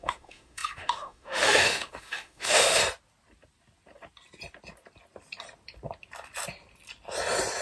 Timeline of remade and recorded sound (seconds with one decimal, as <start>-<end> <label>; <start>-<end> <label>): 0.0-2.8 remade; 2.8-7.6 recorded